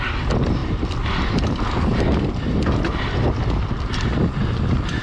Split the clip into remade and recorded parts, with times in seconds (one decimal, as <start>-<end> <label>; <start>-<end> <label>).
0.0-5.0 recorded